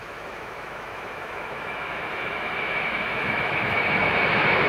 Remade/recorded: remade